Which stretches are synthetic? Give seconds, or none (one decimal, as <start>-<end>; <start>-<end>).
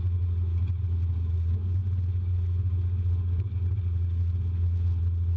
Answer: none